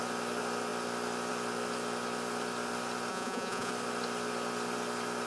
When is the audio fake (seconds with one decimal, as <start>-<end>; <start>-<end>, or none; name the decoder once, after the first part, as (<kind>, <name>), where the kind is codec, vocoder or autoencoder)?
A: 3.1-3.7 (vocoder, Vocos)